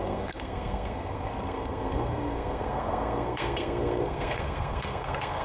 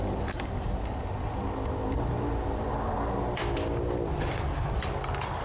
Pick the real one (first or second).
second